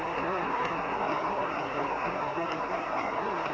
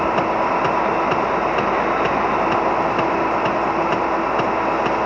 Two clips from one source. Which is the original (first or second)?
second